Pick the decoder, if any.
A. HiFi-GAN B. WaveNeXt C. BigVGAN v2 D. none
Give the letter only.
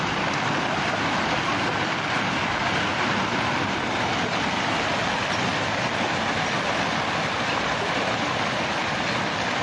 D